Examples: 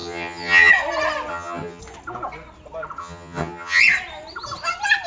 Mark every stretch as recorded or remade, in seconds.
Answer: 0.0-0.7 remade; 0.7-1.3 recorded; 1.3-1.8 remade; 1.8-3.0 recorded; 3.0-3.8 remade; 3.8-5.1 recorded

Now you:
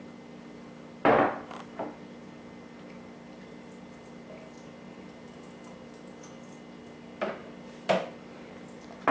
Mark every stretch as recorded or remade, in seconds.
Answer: 0.0-9.1 recorded

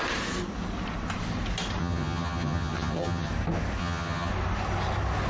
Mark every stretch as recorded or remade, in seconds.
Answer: 0.0-1.8 recorded; 1.8-3.3 remade; 3.3-3.8 recorded; 3.8-4.3 remade; 4.3-5.3 recorded

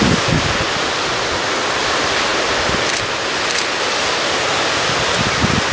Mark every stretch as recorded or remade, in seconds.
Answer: 0.0-5.7 recorded

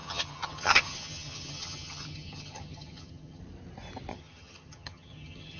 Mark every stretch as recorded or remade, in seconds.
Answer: 0.0-3.4 remade; 3.4-4.1 recorded; 4.1-5.6 remade

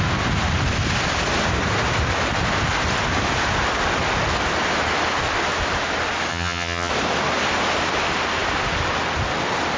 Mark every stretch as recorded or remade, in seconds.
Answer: 0.0-6.3 recorded; 6.3-6.9 remade; 6.9-9.8 recorded

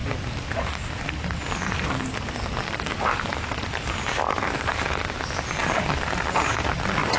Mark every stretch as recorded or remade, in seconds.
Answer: 0.0-7.2 recorded

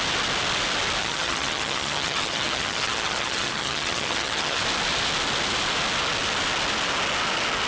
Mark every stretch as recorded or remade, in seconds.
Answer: 0.0-1.0 recorded; 1.0-4.6 remade; 4.6-7.7 recorded